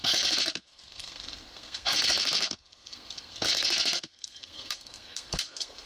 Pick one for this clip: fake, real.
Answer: fake